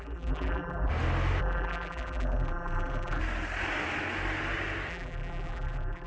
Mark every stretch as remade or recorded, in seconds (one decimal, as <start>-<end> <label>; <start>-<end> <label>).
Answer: 0.0-0.9 remade; 0.9-1.4 recorded; 1.4-3.2 remade; 3.2-4.9 recorded; 4.9-6.1 remade